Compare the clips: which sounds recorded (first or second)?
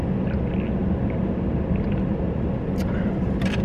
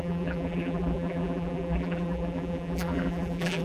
first